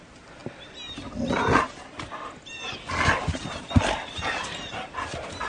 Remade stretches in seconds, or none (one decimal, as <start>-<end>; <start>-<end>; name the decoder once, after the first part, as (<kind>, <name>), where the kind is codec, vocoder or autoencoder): none